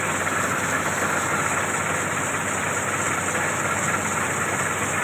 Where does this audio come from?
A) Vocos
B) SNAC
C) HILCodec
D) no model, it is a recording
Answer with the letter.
D